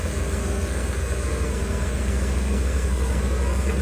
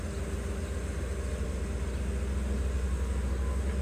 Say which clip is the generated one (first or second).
first